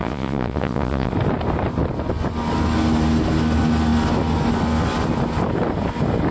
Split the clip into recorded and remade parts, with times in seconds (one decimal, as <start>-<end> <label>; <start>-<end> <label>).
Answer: 0.0-1.1 remade; 1.1-6.3 recorded